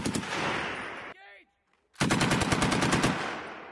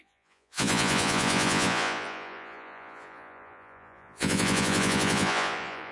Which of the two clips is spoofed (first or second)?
second